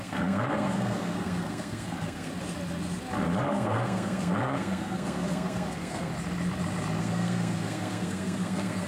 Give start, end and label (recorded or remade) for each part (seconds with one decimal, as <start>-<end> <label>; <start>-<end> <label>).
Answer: 0.0-2.3 remade; 2.3-3.4 recorded; 3.4-6.1 remade; 6.1-7.0 recorded; 7.0-8.9 remade